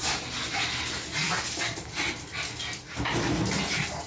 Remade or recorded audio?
recorded